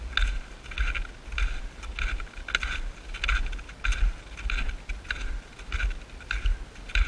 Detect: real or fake real